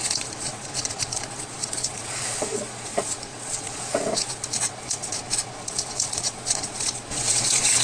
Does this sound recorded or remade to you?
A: remade